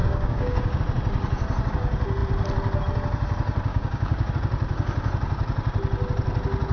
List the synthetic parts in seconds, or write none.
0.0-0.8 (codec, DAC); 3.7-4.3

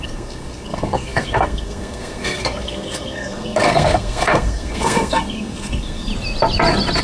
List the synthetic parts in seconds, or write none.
0.0-6.1 (codec, SNAC)

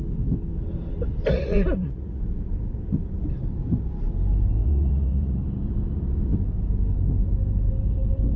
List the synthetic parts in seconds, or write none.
1.3-2.2 (vocoder, Vocos); 4.6-5.4

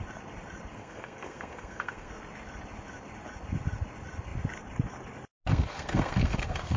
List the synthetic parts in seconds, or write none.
0.7-2.1 (codec, SNAC); 5.5-6.8

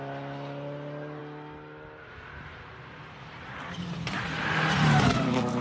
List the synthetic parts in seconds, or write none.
none